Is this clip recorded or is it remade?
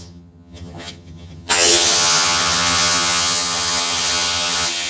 remade